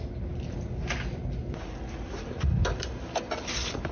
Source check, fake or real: real